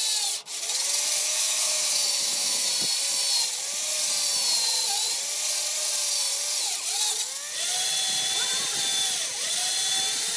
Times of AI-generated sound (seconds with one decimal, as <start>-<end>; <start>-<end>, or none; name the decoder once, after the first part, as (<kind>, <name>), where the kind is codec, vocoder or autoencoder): 1.2-2.7 (autoencoder, DAC-VAE)